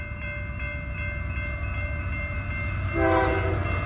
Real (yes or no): yes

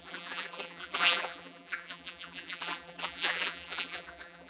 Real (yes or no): no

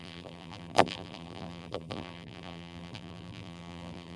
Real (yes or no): no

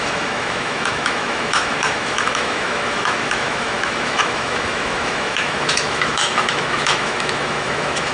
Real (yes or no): no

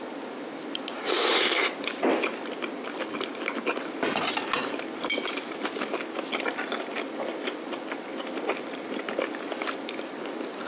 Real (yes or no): yes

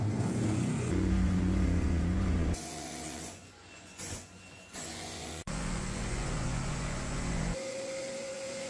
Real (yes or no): no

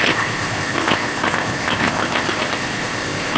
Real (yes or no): no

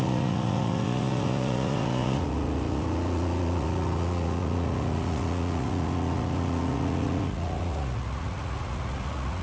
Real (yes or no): no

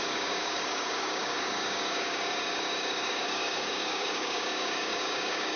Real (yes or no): no